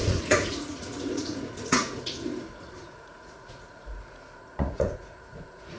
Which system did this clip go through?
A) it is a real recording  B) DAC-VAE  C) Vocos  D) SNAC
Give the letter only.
C